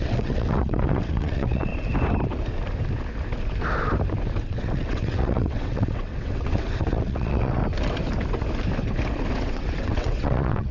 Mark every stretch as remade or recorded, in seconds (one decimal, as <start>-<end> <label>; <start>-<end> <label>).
0.0-1.7 remade; 1.7-4.4 recorded; 4.4-7.6 remade; 7.6-9.3 recorded; 9.3-10.7 remade